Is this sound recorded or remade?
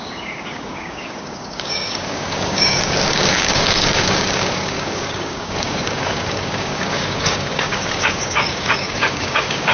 remade